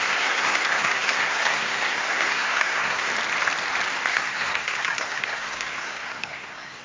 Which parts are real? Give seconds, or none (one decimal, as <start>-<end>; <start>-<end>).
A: 3.1-4.1